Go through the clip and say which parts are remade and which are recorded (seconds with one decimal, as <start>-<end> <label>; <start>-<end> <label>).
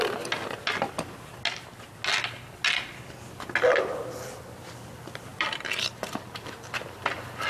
0.0-5.3 recorded; 5.3-6.5 remade; 6.5-7.5 recorded